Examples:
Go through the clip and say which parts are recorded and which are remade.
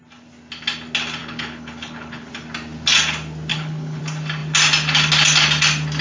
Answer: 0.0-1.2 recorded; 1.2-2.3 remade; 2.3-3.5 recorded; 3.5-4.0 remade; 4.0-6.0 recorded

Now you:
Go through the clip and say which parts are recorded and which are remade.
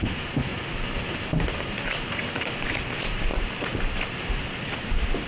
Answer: 0.0-0.5 remade; 0.5-1.6 recorded; 1.6-3.3 remade; 3.3-4.1 recorded; 4.1-5.3 remade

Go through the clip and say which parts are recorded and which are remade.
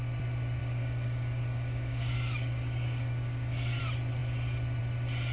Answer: 0.0-0.6 recorded; 0.6-3.8 remade; 3.8-5.3 recorded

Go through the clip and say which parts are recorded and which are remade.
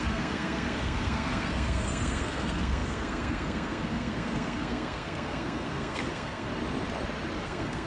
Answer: 0.0-6.5 remade; 6.5-7.4 recorded; 7.4-7.9 remade